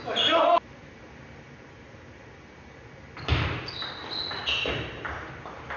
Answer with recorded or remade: recorded